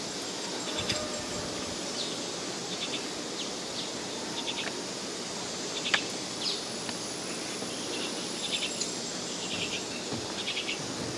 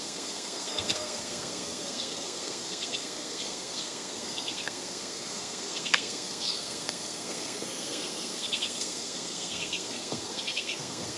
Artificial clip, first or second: second